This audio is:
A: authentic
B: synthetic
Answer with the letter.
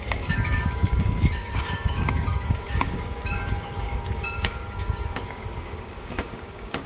B